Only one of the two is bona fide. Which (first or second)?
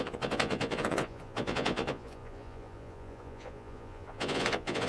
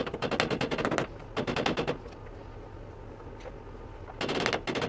second